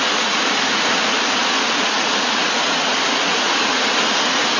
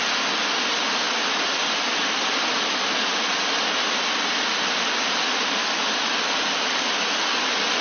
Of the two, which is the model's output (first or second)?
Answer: first